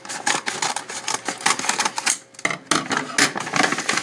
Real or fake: real